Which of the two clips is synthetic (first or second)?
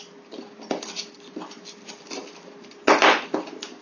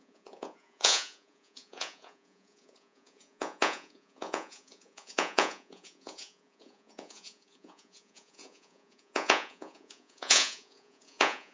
second